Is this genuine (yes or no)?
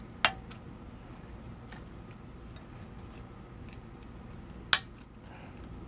yes